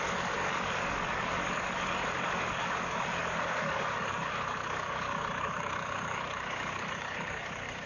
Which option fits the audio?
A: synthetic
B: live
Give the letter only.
A